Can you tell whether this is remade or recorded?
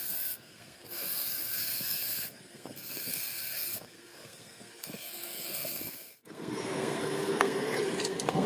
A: remade